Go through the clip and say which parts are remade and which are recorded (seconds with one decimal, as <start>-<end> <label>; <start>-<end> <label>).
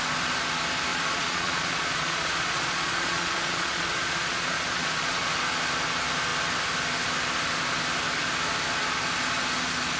0.0-0.9 recorded; 0.9-5.3 remade; 5.3-10.0 recorded